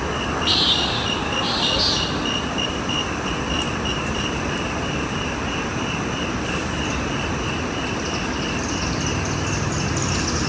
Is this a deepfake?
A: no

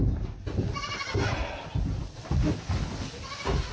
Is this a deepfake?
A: no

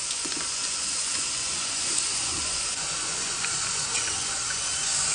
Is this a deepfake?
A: yes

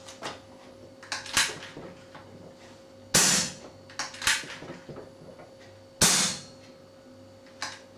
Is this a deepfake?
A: no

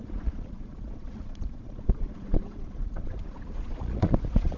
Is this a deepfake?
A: yes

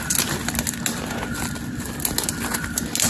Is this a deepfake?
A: no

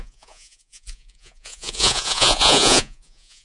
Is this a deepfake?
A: yes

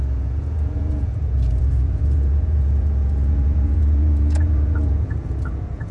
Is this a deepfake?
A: yes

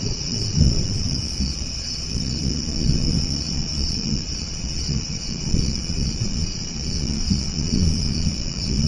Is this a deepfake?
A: yes